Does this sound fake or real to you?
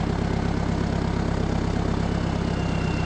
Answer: real